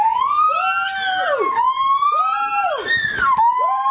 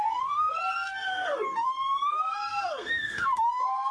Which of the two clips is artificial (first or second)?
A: second